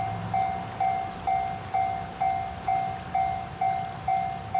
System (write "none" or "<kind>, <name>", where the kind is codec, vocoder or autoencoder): none